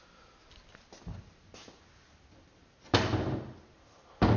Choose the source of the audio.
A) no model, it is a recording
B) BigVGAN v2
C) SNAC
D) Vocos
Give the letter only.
A